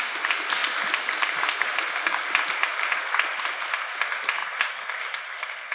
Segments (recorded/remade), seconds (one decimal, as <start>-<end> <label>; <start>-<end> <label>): 0.0-5.7 recorded